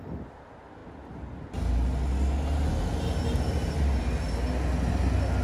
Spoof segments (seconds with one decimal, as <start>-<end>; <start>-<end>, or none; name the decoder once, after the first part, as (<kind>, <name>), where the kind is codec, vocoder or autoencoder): none